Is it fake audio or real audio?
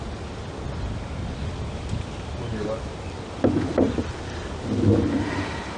real